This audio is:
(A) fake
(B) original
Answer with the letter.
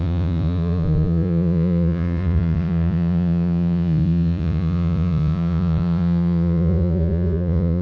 A